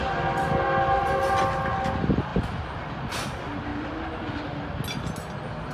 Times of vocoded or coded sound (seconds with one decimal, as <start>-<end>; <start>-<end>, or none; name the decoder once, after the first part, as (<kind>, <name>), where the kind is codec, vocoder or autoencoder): none